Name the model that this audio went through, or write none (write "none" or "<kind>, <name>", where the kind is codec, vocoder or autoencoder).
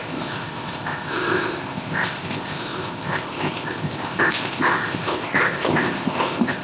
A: codec, ZipCodec